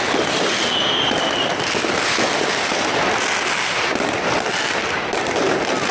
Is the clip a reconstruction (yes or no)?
no